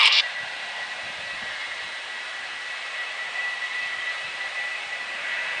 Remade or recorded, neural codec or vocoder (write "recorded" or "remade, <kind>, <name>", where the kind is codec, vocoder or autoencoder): remade, vocoder, BigVGAN v2